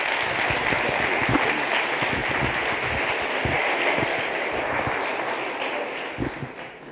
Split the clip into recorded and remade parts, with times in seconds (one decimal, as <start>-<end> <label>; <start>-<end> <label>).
0.0-6.9 recorded